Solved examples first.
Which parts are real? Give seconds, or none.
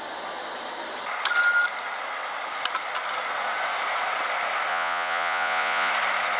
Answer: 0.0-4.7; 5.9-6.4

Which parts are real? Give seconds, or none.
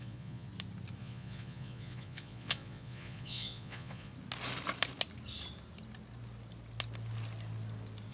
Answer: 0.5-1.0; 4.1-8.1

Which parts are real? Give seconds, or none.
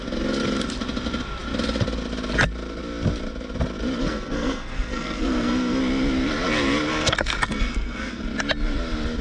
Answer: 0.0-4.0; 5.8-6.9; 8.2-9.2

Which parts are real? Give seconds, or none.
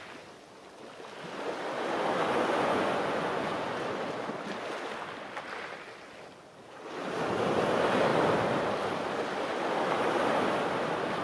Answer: 0.0-2.2; 3.8-11.2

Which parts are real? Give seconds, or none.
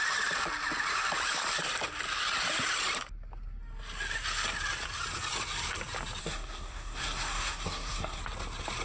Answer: 0.0-6.2; 8.2-8.8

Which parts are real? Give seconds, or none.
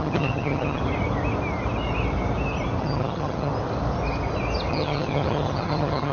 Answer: 0.8-2.8; 3.5-4.7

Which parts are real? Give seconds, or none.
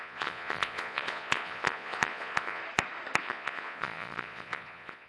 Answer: 2.6-3.2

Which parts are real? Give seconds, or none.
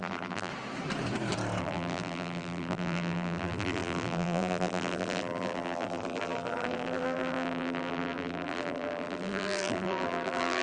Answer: 0.5-1.6